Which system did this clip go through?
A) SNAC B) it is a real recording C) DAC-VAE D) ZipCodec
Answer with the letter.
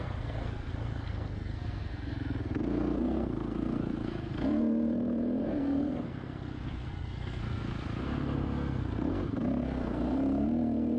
A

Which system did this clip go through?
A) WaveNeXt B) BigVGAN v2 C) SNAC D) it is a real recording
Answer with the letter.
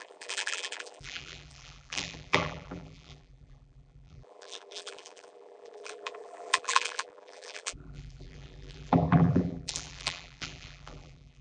B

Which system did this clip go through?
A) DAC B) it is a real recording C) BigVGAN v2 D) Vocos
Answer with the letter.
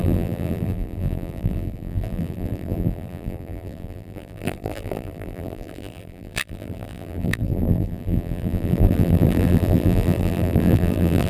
C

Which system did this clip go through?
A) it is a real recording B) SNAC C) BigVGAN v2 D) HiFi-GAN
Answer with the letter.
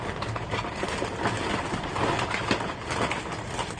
A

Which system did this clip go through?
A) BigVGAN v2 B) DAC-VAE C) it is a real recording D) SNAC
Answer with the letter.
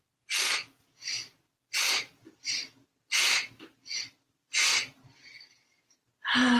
C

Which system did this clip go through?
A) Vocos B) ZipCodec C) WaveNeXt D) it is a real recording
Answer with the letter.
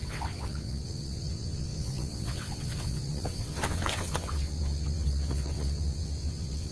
C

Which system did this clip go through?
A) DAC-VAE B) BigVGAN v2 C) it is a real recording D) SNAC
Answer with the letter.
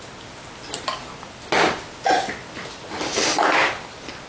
C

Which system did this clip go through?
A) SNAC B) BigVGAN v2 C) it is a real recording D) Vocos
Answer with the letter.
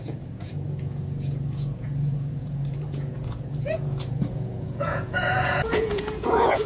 D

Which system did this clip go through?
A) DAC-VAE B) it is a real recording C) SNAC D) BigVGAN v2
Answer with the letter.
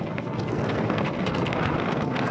C